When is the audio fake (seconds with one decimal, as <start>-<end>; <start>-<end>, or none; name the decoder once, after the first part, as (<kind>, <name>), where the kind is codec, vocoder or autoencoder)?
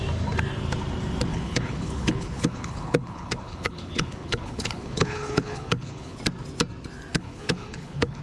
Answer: 1.3-6.2 (codec, HILCodec); 7.1-8.2